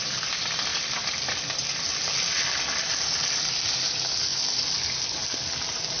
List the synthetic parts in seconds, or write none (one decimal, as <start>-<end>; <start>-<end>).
none